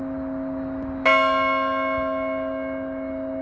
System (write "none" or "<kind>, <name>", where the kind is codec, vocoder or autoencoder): none